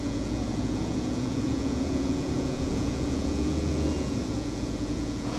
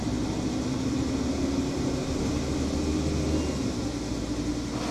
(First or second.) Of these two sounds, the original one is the second